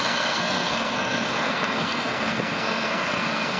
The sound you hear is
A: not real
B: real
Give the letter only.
A